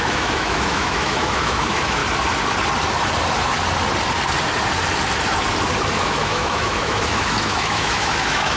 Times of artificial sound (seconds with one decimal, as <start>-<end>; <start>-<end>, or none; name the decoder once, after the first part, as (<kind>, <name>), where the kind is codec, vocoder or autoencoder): 0.0-2.0 (autoencoder, DAC-VAE); 6.0-8.6